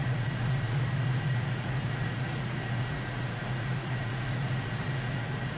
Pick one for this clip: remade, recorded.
remade